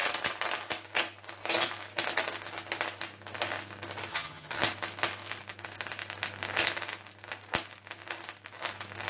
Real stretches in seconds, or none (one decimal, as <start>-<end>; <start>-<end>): 0.0-4.1; 4.6-9.1